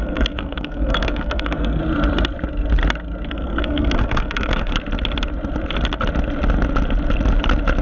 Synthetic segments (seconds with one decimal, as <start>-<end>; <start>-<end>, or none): 0.0-1.8; 3.3-4.7